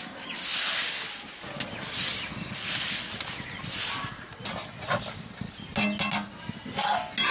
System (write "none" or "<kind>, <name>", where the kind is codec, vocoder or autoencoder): none